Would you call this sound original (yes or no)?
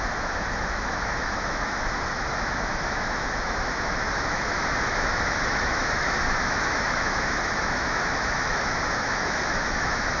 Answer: no